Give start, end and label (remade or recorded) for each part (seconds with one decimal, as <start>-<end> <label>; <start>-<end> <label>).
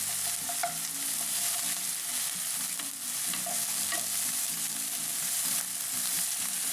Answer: 0.0-3.7 recorded; 3.7-4.4 remade; 4.4-5.1 recorded; 5.1-6.7 remade